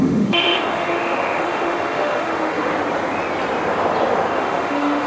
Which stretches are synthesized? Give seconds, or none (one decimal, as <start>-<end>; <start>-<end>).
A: 0.0-2.7; 4.3-5.1